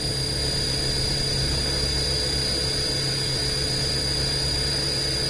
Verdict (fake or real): real